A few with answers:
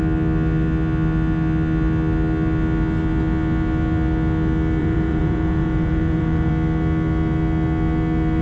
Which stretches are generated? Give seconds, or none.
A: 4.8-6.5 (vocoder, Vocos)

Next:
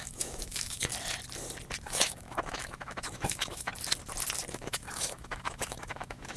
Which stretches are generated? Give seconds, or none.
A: 0.0-0.9 (autoencoder, DAC-VAE); 1.8-3.7; 4.5-6.4

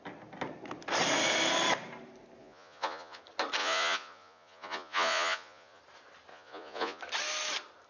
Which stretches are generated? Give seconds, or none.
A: 2.4-3.2 (vocoder, Vocos); 3.6-5.8; 6.3-7.0

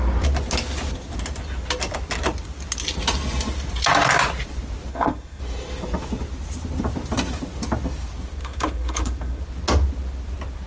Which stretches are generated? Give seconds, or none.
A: 4.9-5.4 (codec, SNAC); 8.4-9.4

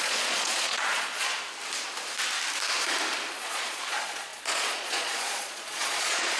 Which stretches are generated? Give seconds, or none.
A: 0.0-1.3 (vocoder, Vocos); 3.3-6.4